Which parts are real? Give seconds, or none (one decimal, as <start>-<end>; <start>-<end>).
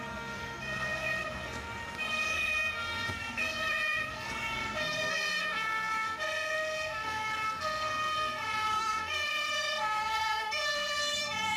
none